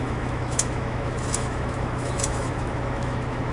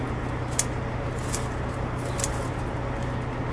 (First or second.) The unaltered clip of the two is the second